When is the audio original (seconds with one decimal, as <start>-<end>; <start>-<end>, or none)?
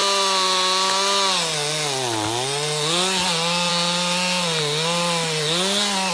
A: 0.0-6.1